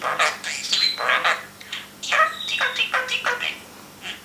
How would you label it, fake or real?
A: real